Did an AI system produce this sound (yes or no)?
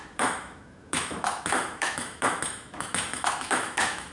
yes